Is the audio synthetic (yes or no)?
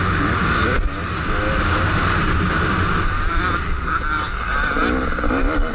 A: no